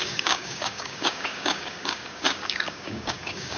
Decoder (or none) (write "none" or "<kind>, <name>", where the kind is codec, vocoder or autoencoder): codec, DAC